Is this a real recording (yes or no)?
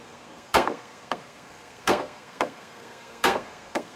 no